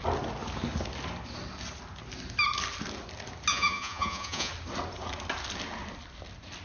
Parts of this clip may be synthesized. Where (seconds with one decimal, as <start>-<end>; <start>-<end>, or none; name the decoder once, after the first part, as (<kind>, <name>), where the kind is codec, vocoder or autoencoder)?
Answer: 3.5-4.5 (vocoder, Vocos)